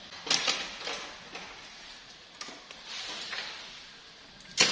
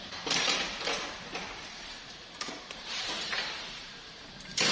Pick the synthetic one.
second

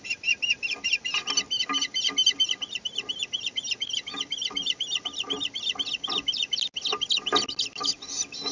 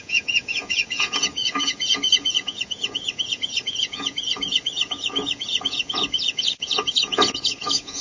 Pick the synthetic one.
second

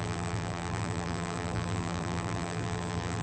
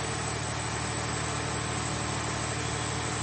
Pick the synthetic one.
first